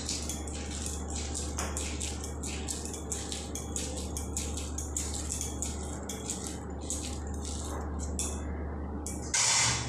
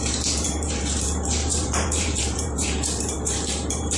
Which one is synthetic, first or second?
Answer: second